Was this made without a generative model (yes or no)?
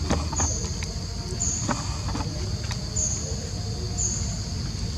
yes